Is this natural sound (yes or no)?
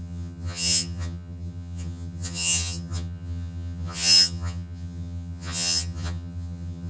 no